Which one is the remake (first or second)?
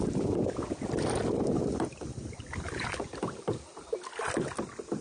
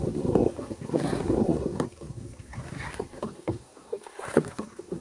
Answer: second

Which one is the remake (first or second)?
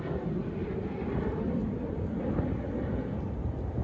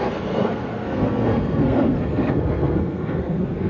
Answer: second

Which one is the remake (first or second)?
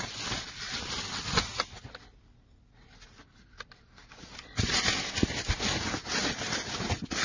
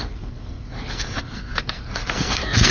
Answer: second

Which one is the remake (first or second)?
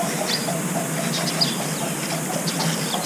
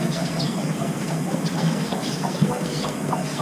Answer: second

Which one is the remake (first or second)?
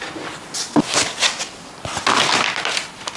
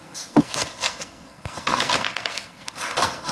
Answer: second